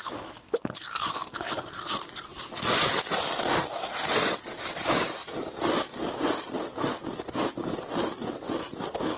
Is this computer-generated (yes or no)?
no